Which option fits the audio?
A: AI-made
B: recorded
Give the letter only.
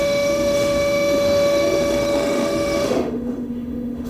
A